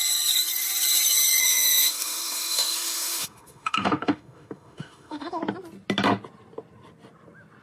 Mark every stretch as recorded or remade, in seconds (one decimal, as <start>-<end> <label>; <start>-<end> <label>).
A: 0.0-1.4 recorded; 1.4-5.4 remade; 5.4-7.6 recorded